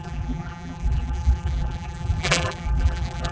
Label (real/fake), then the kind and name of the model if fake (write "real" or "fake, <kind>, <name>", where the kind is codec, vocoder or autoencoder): fake, vocoder, BigVGAN v2